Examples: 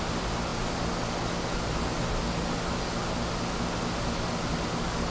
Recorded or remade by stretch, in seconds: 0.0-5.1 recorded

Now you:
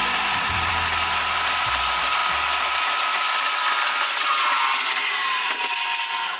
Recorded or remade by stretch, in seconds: 0.0-0.7 remade; 0.7-6.4 recorded

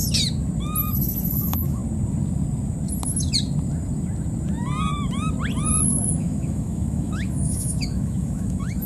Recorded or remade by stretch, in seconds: 0.0-1.3 recorded; 1.3-1.8 remade; 1.8-5.8 recorded; 5.8-8.9 remade

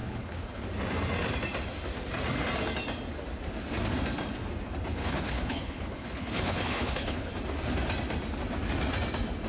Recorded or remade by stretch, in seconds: 0.0-0.6 remade; 0.6-4.9 recorded; 4.9-7.3 remade; 7.3-9.5 recorded

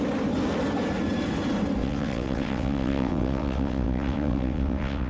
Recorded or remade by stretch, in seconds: 0.0-1.8 recorded; 1.8-5.1 remade

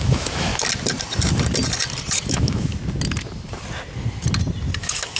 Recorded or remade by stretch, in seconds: 0.0-0.5 remade; 0.5-2.3 recorded; 2.3-2.7 remade; 2.7-4.8 recorded; 4.8-5.2 remade

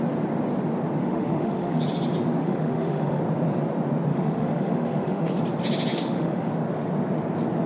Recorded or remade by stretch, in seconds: 0.0-1.0 recorded; 1.0-1.8 remade; 1.8-2.4 recorded; 2.4-3.2 remade; 3.2-4.1 recorded; 4.1-5.4 remade; 5.4-5.9 recorded; 5.9-6.5 remade; 6.5-7.7 recorded